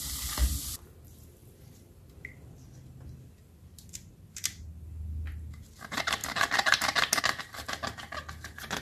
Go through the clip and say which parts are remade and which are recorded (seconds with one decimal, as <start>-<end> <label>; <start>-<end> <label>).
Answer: 0.0-1.4 recorded; 1.4-4.1 remade; 4.1-6.2 recorded; 6.2-7.2 remade; 7.2-8.8 recorded